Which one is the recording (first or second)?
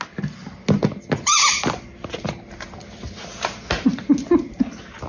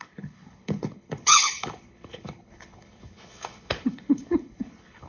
first